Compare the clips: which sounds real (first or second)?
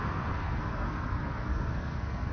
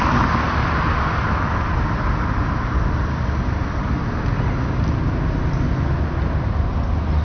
second